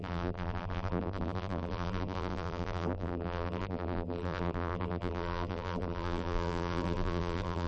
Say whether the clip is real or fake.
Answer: fake